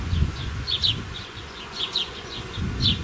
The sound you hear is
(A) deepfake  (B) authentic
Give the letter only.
A